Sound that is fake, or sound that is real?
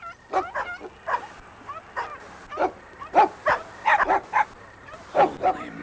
real